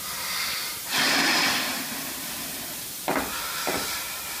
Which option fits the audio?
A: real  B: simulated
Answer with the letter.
A